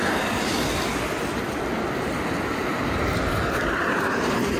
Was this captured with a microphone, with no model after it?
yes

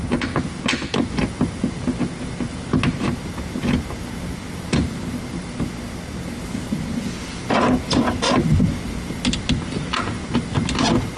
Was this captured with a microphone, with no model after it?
yes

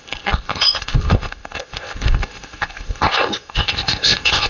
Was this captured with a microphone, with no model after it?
no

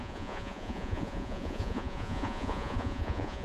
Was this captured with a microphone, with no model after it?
no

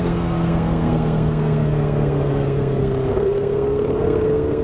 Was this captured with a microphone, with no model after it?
no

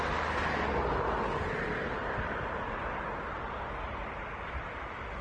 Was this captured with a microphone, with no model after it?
yes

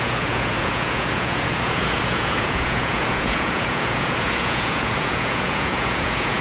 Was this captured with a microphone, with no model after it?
no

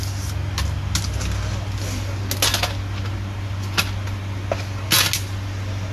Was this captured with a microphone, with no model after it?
yes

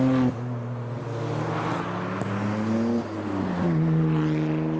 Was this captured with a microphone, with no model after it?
yes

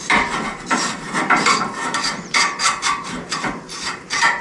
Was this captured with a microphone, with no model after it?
no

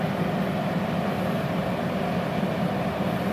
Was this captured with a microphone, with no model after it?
yes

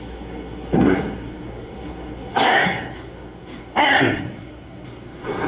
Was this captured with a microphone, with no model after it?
no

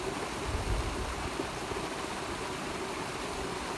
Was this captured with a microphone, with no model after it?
no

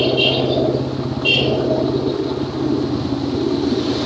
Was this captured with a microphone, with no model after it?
yes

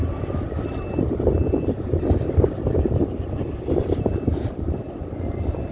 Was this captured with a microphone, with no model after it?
yes